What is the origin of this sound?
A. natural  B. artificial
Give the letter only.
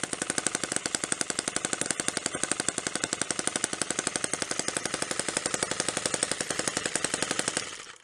A